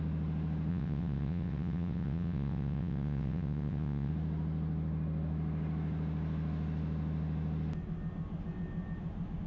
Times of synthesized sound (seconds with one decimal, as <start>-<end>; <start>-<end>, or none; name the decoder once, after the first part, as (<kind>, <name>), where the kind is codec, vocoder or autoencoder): 0.7-4.1 (vocoder, WaveNeXt)